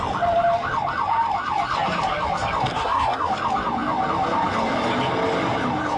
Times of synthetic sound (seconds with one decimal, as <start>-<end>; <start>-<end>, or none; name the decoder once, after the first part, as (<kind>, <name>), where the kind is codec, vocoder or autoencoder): 2.7-3.3 (codec, SNAC)